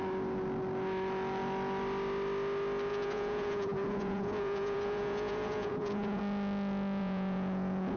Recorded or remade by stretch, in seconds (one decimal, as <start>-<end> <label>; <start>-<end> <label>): 0.0-2.9 recorded; 2.9-6.2 remade; 6.2-7.0 recorded; 7.0-8.0 remade